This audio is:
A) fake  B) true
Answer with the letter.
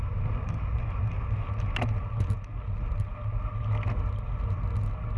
B